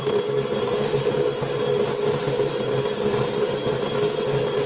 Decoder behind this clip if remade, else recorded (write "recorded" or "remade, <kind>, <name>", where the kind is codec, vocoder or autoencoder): recorded